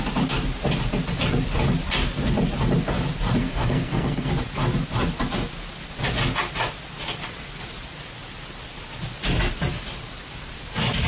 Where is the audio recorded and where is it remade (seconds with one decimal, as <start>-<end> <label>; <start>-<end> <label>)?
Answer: 0.0-3.4 recorded; 3.4-4.3 remade; 4.3-11.1 recorded